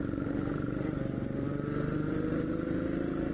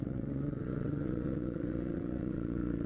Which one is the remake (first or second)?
second